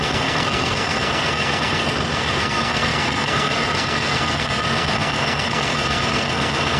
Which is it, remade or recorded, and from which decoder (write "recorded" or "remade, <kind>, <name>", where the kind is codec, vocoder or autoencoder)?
remade, codec, SNAC